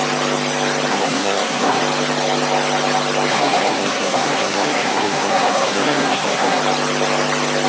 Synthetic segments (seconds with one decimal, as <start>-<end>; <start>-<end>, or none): 0.9-1.8; 3.3-6.6